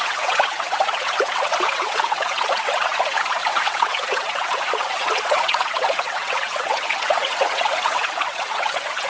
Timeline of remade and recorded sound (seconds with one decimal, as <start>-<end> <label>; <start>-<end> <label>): 0.0-9.1 remade